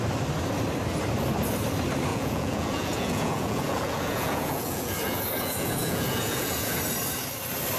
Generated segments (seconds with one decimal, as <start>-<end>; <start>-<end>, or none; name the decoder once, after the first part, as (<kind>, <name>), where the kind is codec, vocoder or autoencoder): 2.1-6.8 (vocoder, Vocos)